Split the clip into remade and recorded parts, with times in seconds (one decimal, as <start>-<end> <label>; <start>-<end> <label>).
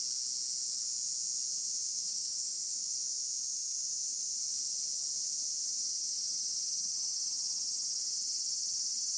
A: 0.0-1.9 recorded; 1.9-3.2 remade; 3.2-9.2 recorded